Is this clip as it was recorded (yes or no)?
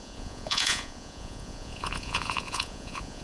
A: no